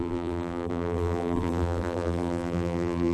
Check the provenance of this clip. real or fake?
fake